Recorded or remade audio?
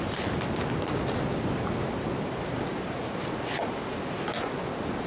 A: recorded